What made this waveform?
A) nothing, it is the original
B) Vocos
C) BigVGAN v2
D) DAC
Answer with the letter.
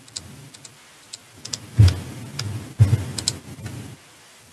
A